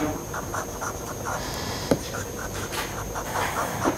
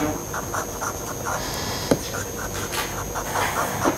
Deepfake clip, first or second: first